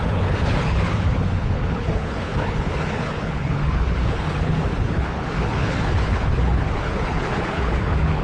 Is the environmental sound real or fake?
fake